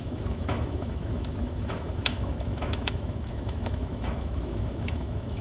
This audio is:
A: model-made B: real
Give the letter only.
A